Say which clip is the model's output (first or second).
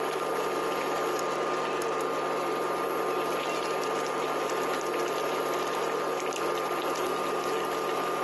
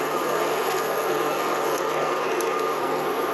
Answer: second